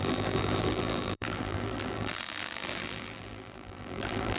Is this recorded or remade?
remade